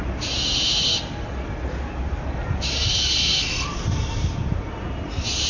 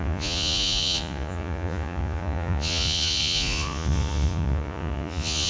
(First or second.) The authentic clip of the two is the first